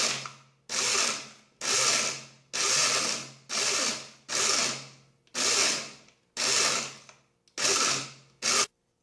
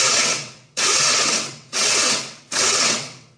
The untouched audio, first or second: first